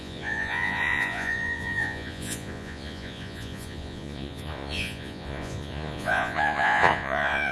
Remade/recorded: remade